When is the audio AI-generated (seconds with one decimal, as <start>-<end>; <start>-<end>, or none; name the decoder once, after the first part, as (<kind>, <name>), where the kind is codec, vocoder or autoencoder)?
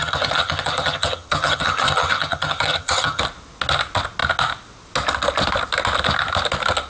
0.0-3.2 (vocoder, HiFi-GAN)